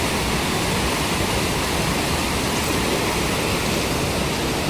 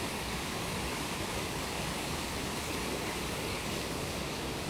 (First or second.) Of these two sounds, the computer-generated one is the second